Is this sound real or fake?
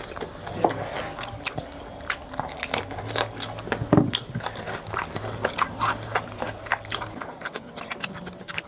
real